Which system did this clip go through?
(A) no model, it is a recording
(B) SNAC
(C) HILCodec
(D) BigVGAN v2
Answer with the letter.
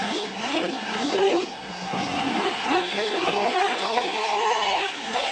B